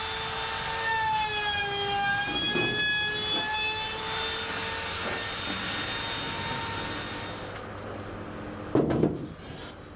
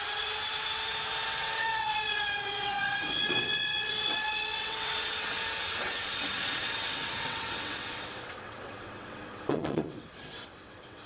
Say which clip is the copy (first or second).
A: second